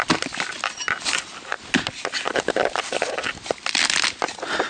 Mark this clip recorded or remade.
recorded